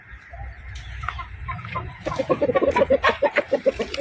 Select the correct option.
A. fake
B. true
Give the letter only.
A